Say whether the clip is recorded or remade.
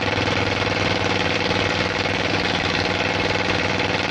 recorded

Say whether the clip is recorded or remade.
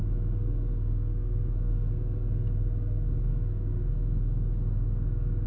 remade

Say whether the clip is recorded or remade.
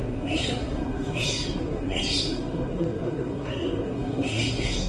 remade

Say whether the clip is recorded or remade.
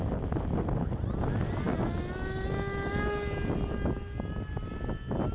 recorded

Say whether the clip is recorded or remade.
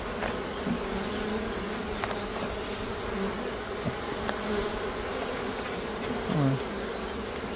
recorded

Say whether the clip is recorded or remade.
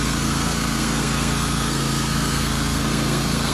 remade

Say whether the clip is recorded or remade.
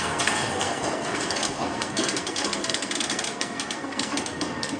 remade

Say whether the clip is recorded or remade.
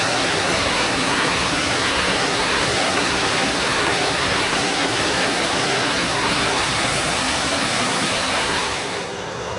remade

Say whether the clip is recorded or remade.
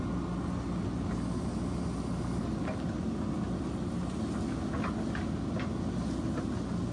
recorded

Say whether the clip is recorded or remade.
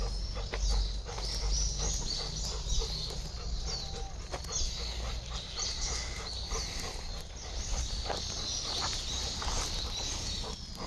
recorded